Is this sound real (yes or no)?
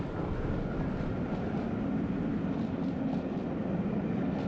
yes